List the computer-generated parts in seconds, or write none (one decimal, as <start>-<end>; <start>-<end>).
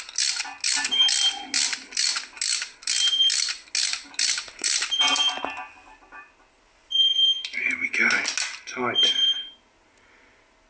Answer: none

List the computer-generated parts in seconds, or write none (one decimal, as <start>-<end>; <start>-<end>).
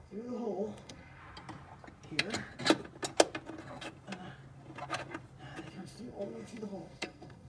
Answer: 0.0-1.2; 5.7-7.5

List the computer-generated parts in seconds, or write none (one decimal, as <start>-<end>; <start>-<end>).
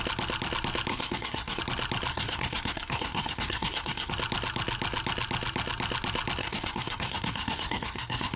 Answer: 0.9-1.6; 2.1-4.1; 6.4-8.4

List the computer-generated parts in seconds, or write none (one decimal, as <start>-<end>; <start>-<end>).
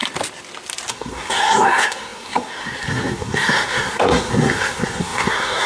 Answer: 0.9-5.7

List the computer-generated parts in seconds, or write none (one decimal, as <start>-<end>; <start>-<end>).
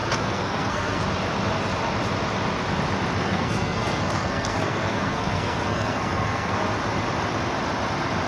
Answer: 0.0-1.0; 3.2-6.6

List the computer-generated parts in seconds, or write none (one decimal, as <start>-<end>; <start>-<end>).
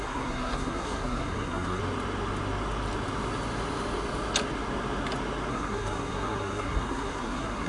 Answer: 0.0-1.8; 5.5-7.7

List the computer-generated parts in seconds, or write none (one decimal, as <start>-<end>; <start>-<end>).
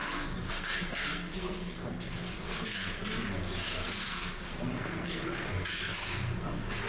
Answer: 0.0-6.9